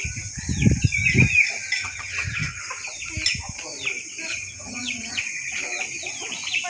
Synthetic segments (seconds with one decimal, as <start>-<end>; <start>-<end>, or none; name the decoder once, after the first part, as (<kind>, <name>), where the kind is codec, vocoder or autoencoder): 1.8-2.6 (vocoder, HiFi-GAN); 4.3-5.2